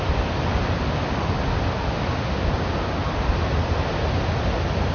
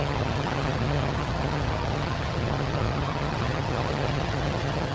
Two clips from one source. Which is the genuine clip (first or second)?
first